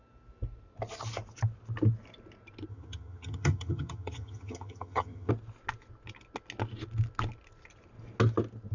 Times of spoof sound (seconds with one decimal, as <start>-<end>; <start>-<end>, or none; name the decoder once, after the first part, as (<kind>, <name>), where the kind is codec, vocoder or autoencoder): 2.7-5.3 (vocoder, HiFi-GAN)